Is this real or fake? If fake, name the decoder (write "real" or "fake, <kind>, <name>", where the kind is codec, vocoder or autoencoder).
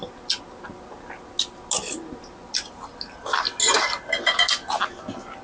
real